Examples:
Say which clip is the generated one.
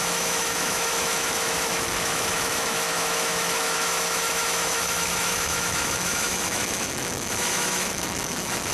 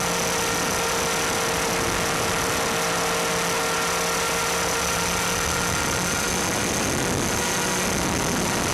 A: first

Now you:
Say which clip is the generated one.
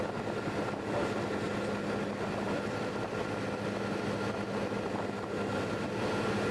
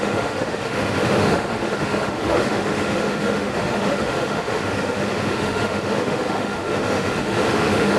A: second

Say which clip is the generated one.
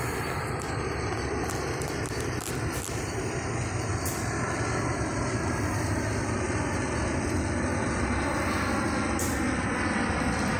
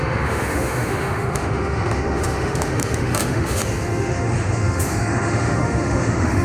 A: second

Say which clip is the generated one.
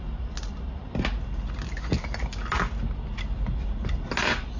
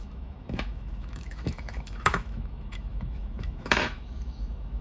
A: second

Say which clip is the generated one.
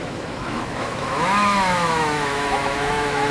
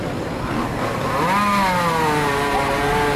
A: first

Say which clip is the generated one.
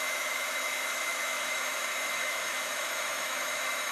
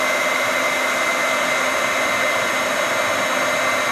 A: first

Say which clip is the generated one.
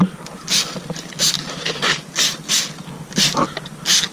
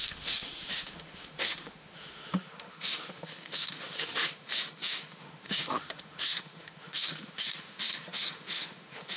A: second